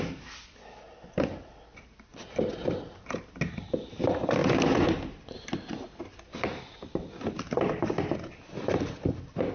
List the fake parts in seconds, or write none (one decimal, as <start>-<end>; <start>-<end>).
0.0-2.1; 3.5-9.5